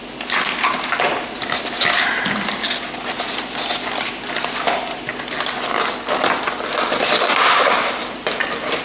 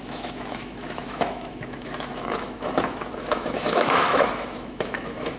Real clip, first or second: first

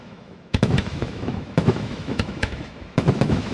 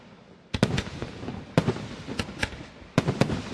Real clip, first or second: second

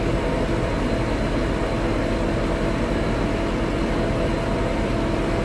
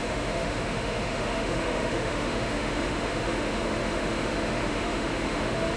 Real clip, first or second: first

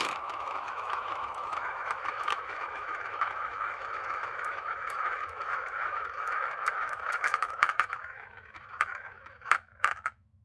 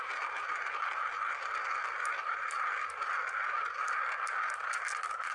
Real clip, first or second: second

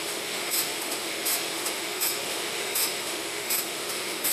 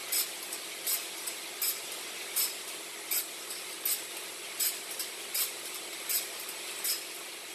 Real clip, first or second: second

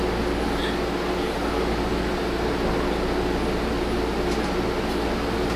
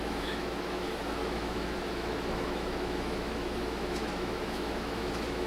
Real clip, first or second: first